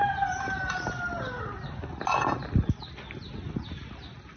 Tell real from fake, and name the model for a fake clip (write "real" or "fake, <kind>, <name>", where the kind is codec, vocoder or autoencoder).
real